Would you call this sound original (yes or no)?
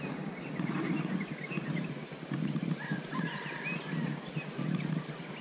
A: yes